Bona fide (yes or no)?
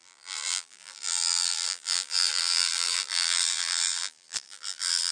no